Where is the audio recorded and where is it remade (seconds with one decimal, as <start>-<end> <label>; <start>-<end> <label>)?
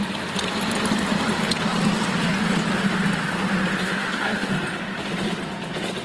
0.0-3.8 recorded; 3.8-4.5 remade; 4.5-6.0 recorded